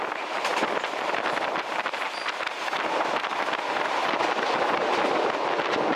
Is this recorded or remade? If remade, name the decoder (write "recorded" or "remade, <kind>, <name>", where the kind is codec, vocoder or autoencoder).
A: recorded